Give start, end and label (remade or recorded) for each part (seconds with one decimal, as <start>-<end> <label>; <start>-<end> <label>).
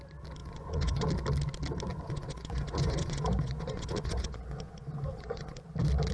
0.0-0.4 recorded; 0.4-1.1 remade; 1.1-1.9 recorded; 1.9-5.6 remade; 5.6-6.1 recorded